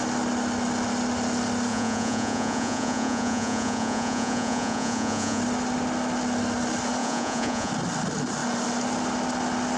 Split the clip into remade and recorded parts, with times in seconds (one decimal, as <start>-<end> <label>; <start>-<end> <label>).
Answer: 0.0-1.7 recorded; 1.7-5.4 remade; 5.4-7.0 recorded; 7.0-7.7 remade; 7.7-9.8 recorded